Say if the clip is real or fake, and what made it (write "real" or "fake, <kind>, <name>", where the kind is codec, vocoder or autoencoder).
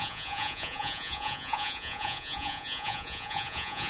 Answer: fake, vocoder, Vocos